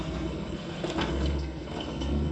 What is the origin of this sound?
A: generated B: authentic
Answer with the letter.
A